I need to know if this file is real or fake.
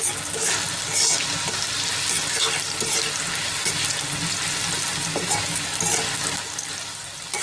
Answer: real